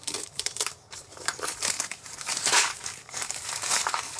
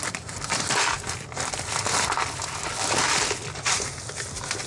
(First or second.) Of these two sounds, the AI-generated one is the first